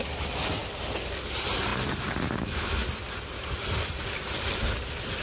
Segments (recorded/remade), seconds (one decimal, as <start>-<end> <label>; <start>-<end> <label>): 0.0-1.7 recorded; 1.7-4.6 remade; 4.6-5.2 recorded